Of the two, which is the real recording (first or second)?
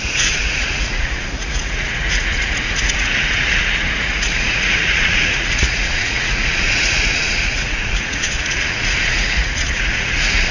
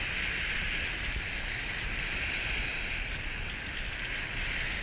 second